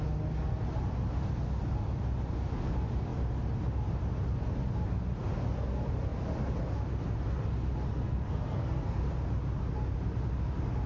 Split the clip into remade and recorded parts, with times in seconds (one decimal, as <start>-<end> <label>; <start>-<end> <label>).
0.0-7.9 recorded; 7.9-9.0 remade; 9.0-10.9 recorded